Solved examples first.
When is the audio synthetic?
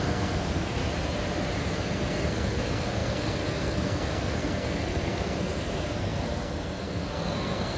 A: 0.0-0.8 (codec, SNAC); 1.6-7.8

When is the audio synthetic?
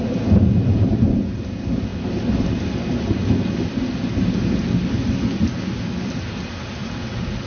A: none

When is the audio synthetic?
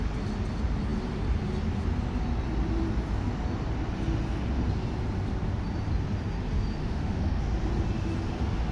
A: 6.8-7.4 (autoencoder, DAC-VAE)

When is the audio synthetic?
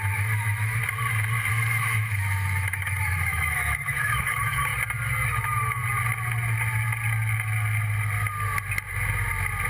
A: 0.0-0.8 (autoencoder, DAC-VAE); 1.5-4.7; 5.3-5.8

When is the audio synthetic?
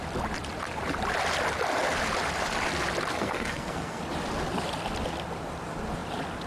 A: 3.1-4.0 (codec, SNAC)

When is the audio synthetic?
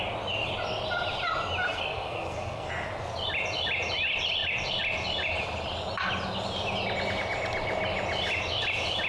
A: 1.7-2.7 (codec, SNAC)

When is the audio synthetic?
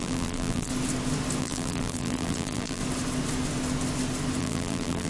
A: 0.0-0.7 (vocoder, BigVGAN v2); 1.4-2.8; 4.4-5.1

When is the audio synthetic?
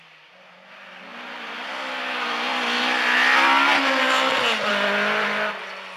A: none